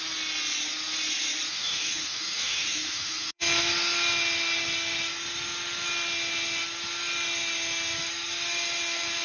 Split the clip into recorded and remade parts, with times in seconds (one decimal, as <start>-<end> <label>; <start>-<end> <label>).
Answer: 0.0-1.5 recorded; 1.5-3.4 remade; 3.4-9.2 recorded